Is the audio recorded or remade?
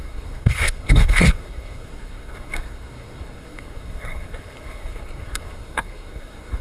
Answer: remade